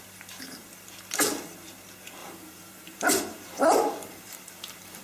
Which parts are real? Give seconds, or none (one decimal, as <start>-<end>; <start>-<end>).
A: 0.0-2.2